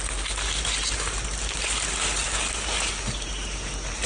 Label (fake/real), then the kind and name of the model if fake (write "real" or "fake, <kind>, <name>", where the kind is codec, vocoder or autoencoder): real